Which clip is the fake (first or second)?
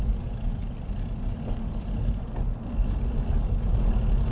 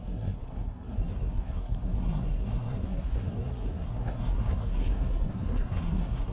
second